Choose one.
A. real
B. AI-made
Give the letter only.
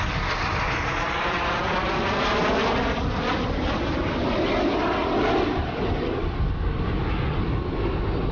A